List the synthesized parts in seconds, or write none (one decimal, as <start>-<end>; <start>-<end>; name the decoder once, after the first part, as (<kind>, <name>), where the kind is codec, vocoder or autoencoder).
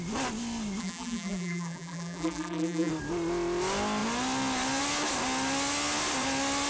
0.8-2.9 (vocoder, BigVGAN v2)